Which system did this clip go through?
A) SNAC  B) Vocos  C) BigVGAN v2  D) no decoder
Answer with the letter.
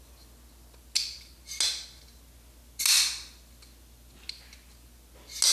D